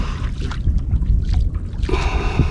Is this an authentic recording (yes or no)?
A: yes